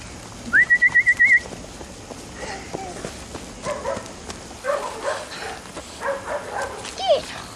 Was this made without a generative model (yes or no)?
yes